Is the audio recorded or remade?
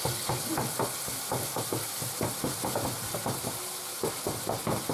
recorded